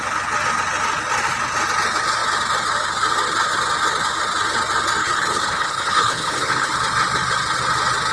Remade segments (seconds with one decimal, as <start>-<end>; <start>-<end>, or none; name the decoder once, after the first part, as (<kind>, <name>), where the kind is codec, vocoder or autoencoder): 5.0-6.7 (codec, HILCodec)